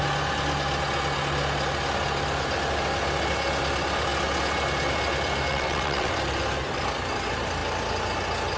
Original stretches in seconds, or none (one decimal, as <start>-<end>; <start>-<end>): 0.0-5.5; 6.2-8.6